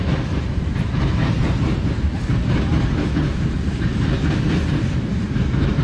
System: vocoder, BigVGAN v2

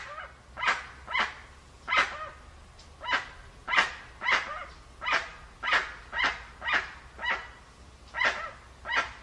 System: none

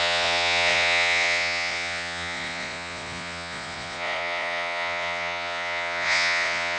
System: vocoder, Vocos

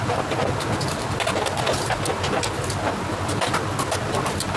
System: none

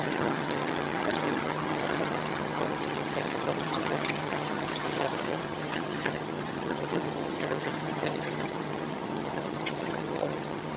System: vocoder, HiFi-GAN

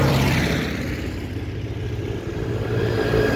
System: vocoder, BigVGAN v2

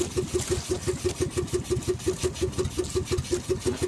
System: none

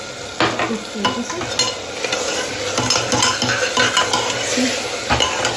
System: none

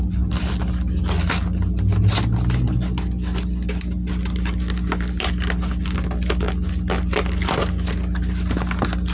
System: none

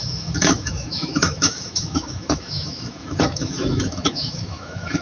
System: autoencoder, DAC-VAE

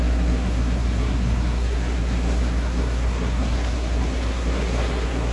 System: codec, SNAC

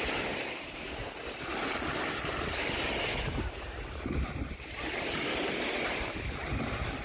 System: none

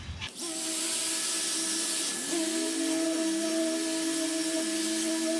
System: none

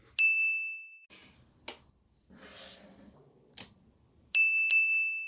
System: none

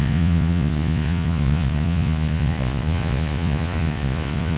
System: vocoder, Vocos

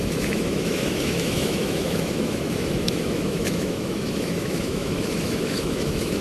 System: autoencoder, DAC-VAE